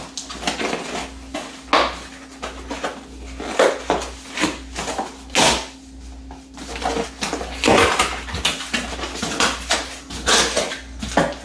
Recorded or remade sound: recorded